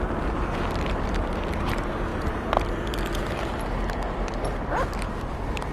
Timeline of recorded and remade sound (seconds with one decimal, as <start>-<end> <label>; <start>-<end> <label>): 0.0-5.7 recorded